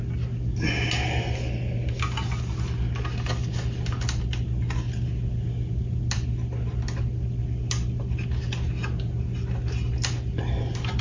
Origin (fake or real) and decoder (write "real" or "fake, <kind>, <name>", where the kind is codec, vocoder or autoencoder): real